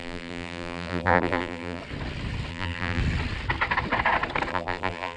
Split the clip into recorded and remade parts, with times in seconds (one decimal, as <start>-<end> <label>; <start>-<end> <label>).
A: 0.0-1.8 remade; 1.8-2.5 recorded; 2.5-3.0 remade; 3.0-4.5 recorded; 4.5-5.2 remade